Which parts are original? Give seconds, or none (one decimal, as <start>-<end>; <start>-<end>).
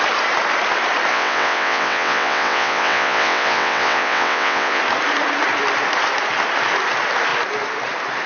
0.0-1.1; 4.8-8.3